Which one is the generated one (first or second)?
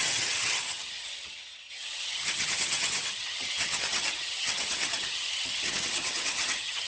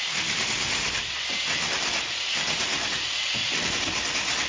first